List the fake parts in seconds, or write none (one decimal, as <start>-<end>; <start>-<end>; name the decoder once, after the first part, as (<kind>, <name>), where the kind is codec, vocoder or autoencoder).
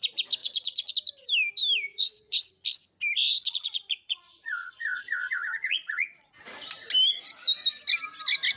0.4-0.9 (vocoder, Vocos); 1.9-2.5; 3.3-6.3